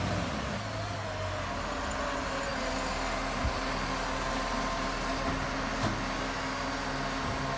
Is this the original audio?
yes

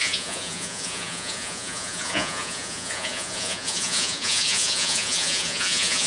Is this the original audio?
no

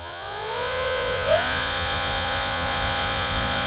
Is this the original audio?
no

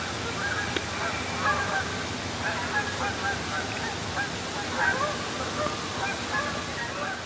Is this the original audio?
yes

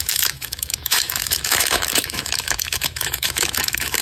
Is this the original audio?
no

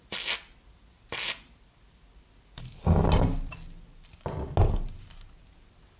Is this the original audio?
yes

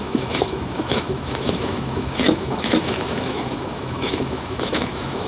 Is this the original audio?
no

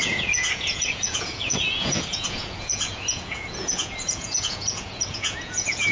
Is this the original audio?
no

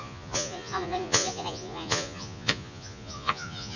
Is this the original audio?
no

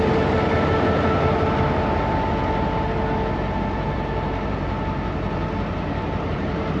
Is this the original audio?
yes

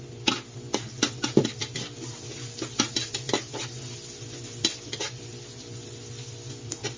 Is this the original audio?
yes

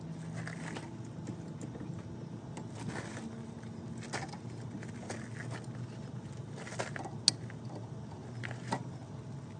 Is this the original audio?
yes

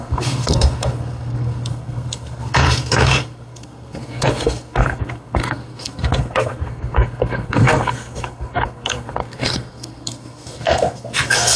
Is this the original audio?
no